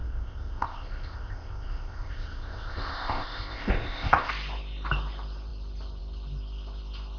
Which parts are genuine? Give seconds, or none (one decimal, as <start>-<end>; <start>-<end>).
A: 4.3-7.2